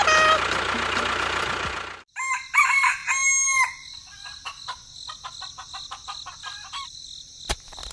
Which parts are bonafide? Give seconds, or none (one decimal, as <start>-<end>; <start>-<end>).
0.0-7.9